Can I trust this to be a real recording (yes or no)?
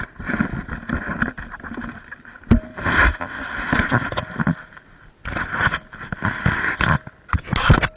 yes